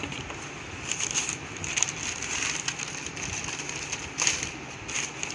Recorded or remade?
remade